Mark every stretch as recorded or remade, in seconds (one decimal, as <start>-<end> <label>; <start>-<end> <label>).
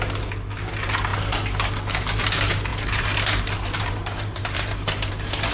0.0-2.7 recorded; 2.7-5.1 remade; 5.1-5.5 recorded